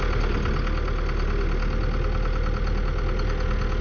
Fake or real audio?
real